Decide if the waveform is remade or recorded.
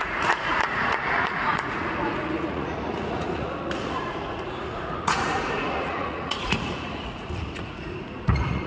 remade